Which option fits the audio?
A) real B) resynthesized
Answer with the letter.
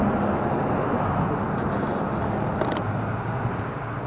A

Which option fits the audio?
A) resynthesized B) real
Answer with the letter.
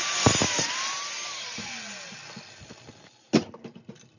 B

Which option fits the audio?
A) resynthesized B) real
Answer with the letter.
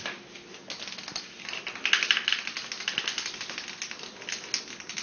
B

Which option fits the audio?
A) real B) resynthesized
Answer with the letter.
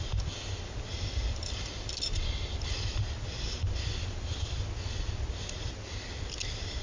A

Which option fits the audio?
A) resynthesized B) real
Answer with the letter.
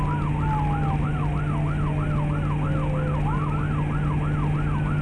B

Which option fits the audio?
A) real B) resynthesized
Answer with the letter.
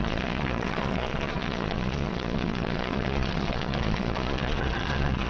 B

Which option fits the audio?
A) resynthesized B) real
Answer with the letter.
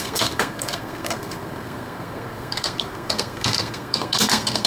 A